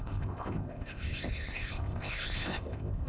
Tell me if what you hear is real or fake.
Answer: fake